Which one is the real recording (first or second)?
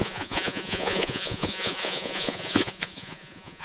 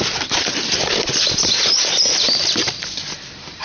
second